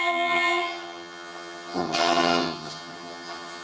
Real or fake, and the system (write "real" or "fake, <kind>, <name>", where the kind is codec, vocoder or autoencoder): fake, vocoder, HiFi-GAN